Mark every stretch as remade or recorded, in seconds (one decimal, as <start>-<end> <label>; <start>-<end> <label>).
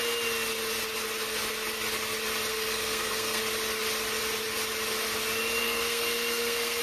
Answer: 0.0-2.5 recorded; 2.5-3.4 remade; 3.4-5.6 recorded; 5.6-6.8 remade